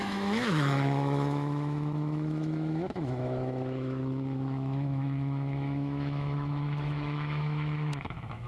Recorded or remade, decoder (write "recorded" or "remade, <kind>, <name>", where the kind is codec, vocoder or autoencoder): remade, autoencoder, DAC-VAE